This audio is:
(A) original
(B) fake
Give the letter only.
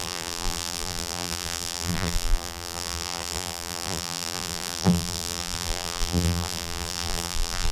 B